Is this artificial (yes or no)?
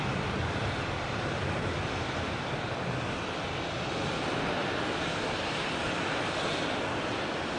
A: yes